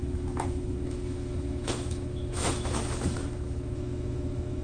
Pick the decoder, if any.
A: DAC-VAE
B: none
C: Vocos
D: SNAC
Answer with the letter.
A